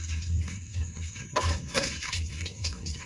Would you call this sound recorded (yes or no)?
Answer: no